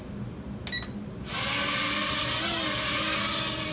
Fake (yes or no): no